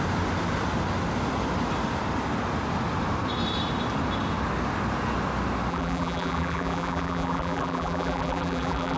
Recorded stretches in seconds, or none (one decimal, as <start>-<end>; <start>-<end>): 0.0-5.7